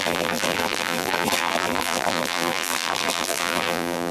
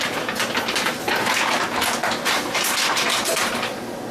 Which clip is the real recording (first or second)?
second